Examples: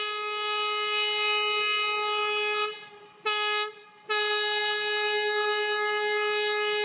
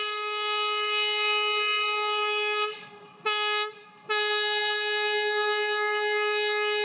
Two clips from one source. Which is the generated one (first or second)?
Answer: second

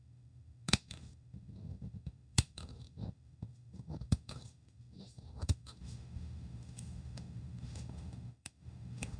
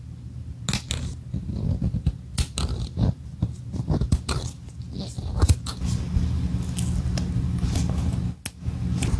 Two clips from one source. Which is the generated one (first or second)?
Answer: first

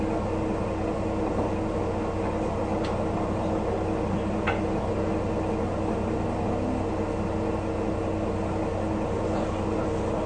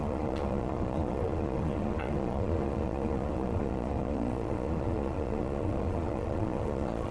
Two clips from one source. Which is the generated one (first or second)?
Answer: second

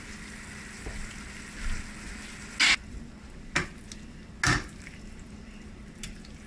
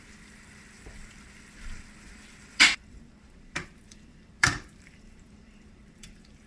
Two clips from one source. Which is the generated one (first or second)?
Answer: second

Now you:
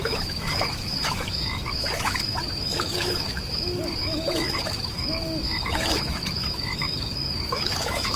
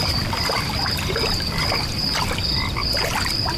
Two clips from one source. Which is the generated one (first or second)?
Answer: first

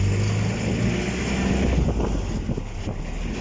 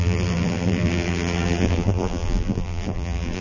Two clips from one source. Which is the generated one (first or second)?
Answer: second